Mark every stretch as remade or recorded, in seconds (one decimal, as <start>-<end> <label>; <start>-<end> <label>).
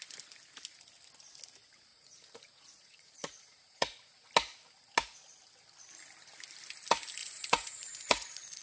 0.0-1.9 recorded; 1.9-4.3 remade; 4.3-7.2 recorded; 7.2-8.6 remade